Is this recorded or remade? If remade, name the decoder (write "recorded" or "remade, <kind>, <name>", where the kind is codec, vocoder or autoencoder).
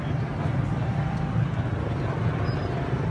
remade, vocoder, BigVGAN v2